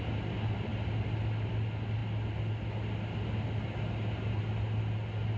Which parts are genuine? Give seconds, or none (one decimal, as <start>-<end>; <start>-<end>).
0.0-5.4